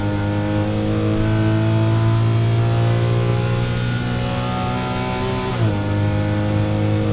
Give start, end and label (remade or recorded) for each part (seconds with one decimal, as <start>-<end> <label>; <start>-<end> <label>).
0.0-7.1 recorded